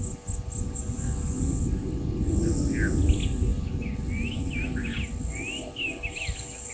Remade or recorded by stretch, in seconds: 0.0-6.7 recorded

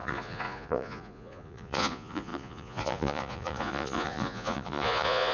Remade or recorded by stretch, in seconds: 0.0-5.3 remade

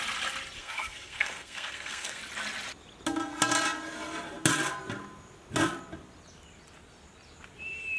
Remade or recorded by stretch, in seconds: 0.0-0.6 recorded; 0.6-2.2 remade; 2.2-8.0 recorded

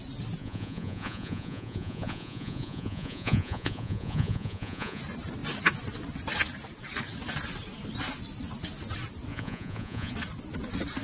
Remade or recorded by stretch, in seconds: 0.0-0.4 recorded; 0.4-5.0 remade; 5.0-9.3 recorded; 9.3-10.1 remade; 10.1-11.0 recorded

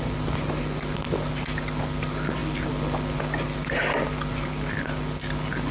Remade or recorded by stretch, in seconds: 0.0-5.7 recorded

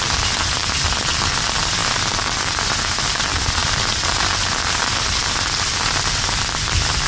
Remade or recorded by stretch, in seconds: 0.0-3.6 recorded; 3.6-4.4 remade; 4.4-7.1 recorded

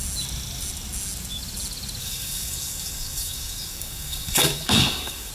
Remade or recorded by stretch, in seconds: 0.0-2.0 recorded; 2.0-5.3 remade

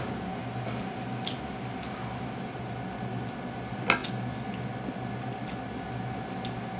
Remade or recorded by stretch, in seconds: 0.0-6.8 recorded